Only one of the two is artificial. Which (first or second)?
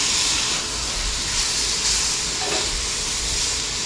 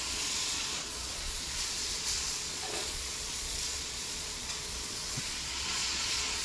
second